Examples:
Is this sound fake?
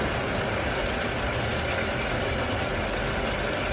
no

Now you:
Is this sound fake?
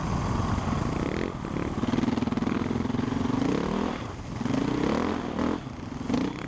no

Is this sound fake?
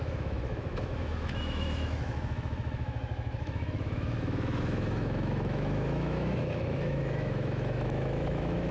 yes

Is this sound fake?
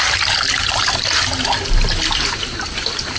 no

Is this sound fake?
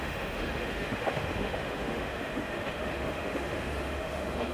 yes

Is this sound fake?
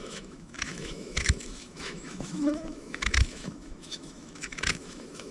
yes